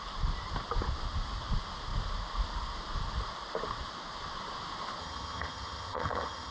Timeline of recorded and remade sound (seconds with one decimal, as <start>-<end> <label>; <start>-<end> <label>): 0.0-5.0 recorded; 5.0-6.5 remade